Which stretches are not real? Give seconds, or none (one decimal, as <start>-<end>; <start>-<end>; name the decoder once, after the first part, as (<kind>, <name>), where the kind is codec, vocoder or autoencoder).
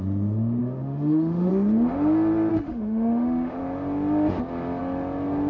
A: 0.6-1.5 (autoencoder, DAC-VAE); 2.5-3.6